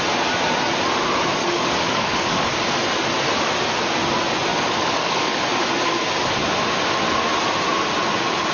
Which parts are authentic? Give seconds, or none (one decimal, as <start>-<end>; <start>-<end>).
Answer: 0.0-1.4; 2.6-4.5; 5.4-8.5